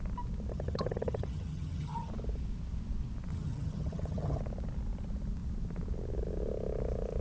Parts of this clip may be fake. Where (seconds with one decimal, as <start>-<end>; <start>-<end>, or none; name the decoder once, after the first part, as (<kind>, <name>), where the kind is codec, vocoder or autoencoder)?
0.5-2.1 (vocoder, HiFi-GAN); 3.3-4.4